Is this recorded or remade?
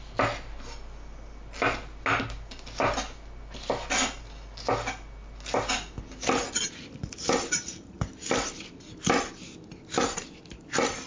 recorded